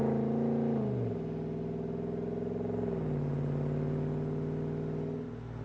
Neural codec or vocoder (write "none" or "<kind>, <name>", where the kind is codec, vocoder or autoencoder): none